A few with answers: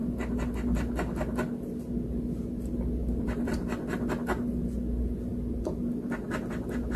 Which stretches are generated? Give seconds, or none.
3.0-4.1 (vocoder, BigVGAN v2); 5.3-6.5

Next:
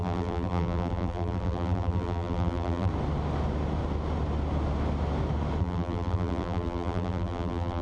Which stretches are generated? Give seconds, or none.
0.0-2.9 (vocoder, BigVGAN v2); 5.6-7.8

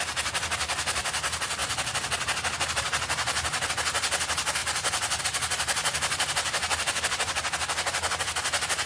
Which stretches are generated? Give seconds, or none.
1.6-3.7 (vocoder, BigVGAN v2); 4.6-5.2

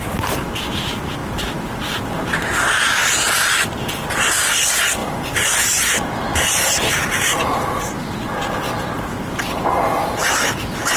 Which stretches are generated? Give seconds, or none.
6.3-8.1 (vocoder, BigVGAN v2)

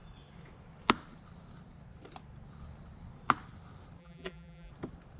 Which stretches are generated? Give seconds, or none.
4.0-4.7 (vocoder, BigVGAN v2)